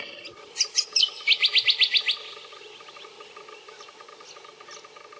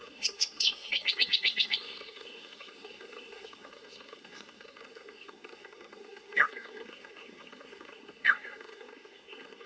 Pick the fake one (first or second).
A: second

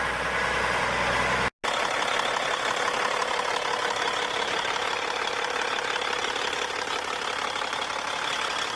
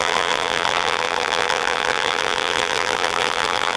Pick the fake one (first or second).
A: second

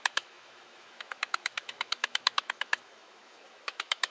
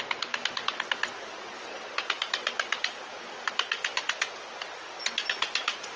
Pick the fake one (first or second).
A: first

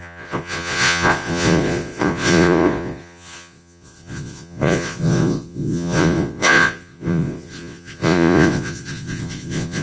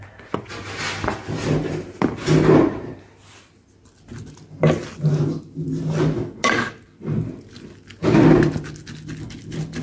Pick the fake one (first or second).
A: first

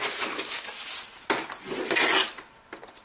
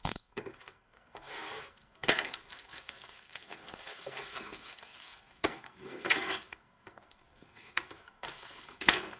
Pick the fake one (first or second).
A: second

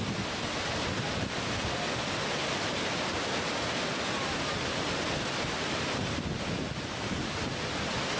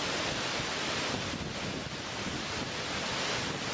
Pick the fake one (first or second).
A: first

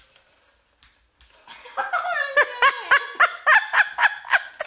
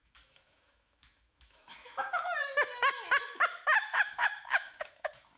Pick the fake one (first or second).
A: second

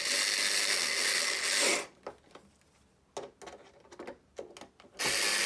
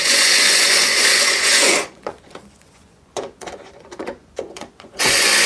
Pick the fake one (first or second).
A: second